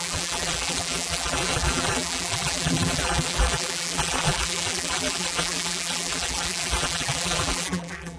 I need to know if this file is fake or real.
fake